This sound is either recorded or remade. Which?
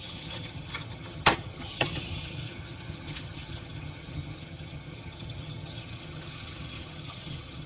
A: remade